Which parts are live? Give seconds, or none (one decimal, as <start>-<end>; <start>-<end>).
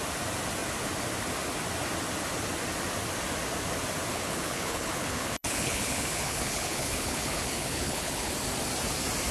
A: 0.0-4.1; 8.3-9.3